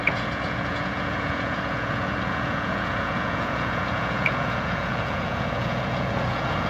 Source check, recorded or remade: remade